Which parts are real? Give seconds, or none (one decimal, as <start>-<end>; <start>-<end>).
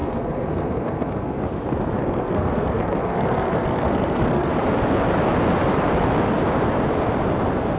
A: 1.4-2.0; 4.5-7.8